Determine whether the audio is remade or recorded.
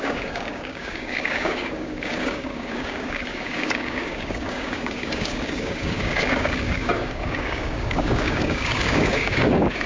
remade